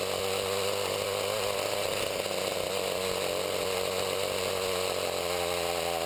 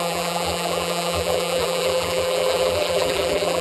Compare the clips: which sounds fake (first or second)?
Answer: second